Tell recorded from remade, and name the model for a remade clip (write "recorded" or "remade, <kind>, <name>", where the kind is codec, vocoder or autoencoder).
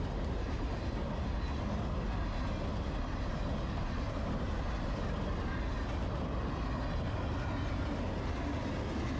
recorded